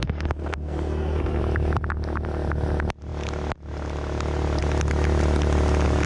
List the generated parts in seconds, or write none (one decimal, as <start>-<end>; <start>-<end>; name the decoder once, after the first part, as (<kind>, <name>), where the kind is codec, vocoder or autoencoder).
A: 0.0-1.4 (codec, SNAC)